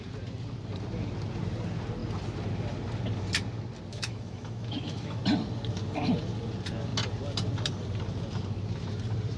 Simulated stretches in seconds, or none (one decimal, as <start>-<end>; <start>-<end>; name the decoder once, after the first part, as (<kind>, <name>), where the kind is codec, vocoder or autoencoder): 3.9-5.2 (autoencoder, DAC-VAE)